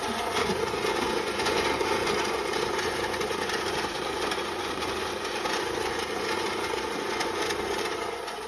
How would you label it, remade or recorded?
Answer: remade